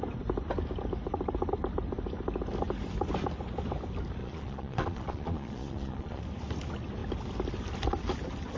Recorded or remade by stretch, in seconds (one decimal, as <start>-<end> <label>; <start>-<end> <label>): 0.0-4.2 recorded; 4.2-6.2 remade; 6.2-8.6 recorded